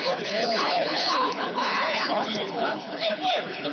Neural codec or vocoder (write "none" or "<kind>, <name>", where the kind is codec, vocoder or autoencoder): codec, HILCodec